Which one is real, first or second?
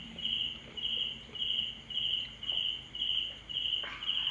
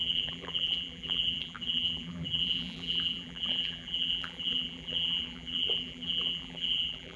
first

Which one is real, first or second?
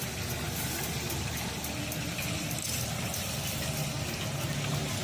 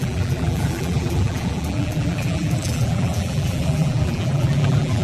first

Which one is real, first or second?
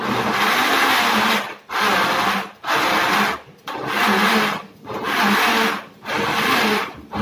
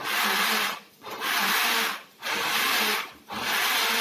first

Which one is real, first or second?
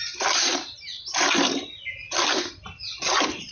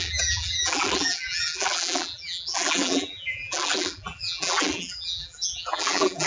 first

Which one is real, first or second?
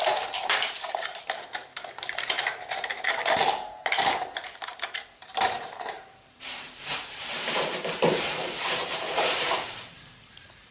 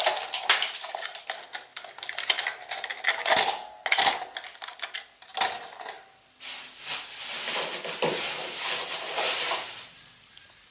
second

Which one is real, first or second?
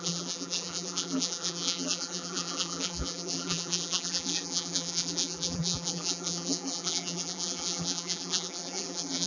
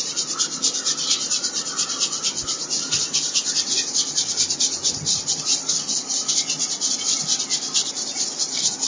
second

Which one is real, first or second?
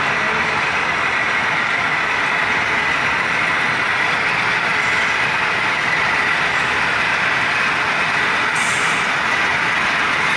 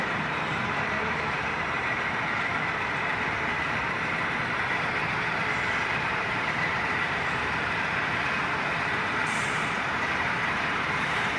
first